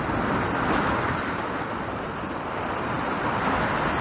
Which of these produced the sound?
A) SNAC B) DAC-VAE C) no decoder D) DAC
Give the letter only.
C